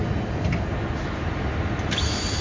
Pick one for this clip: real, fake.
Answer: real